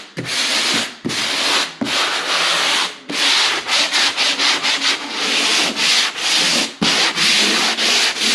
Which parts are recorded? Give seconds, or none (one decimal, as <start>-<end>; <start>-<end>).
0.0-3.6; 4.5-8.3